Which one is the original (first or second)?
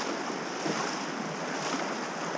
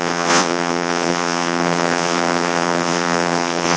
first